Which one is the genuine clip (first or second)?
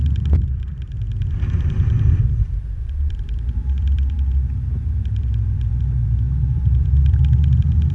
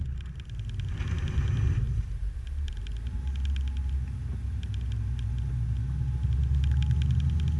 second